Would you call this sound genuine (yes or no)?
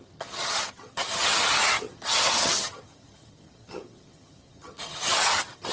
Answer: no